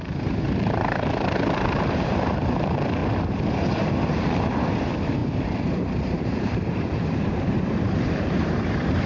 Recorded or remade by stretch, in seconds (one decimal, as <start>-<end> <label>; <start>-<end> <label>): 0.0-3.0 remade; 3.0-4.1 recorded; 4.1-9.1 remade